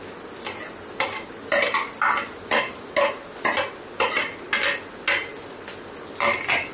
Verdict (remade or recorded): recorded